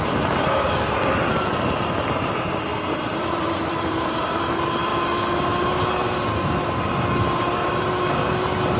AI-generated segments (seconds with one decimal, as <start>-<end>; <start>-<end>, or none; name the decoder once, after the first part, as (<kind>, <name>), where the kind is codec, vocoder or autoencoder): 2.7-4.4 (vocoder, BigVGAN v2)